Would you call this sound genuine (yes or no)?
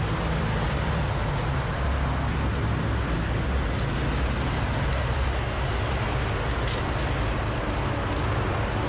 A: yes